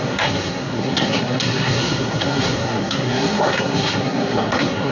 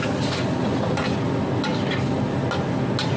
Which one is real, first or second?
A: second